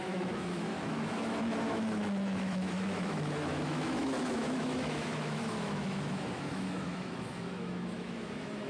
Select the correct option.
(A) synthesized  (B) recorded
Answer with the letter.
A